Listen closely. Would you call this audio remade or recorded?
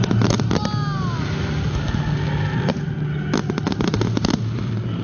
recorded